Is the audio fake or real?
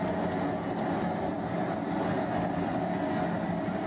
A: real